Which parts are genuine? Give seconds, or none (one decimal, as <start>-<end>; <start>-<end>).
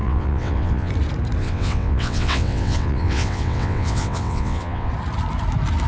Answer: 0.9-1.4; 4.9-5.9